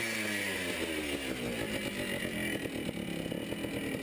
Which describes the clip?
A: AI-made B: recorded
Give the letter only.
B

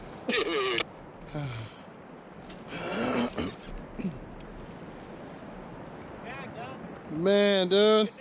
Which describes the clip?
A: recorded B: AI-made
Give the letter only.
A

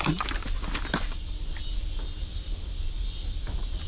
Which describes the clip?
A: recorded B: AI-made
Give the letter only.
A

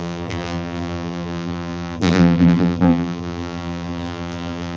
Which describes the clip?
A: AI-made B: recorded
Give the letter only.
A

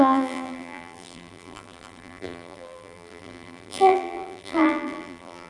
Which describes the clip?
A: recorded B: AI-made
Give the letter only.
B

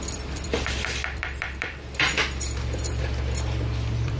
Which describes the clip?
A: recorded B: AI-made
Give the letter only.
B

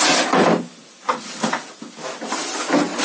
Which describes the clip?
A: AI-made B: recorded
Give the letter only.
B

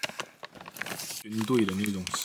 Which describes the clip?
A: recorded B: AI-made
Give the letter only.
A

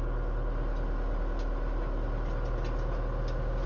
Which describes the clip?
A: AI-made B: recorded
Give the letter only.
B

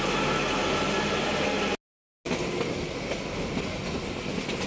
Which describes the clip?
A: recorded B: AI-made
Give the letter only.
A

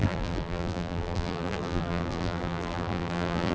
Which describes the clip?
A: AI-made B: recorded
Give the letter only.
A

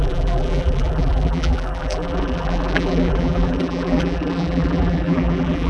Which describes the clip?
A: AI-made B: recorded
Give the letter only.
A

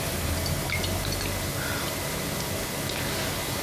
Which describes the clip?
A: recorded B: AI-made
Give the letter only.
A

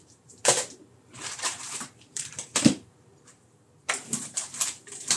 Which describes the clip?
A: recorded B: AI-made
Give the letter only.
B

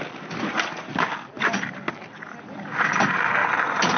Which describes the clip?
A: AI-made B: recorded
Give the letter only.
B